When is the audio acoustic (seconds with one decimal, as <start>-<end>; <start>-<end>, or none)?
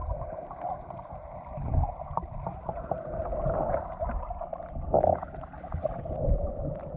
none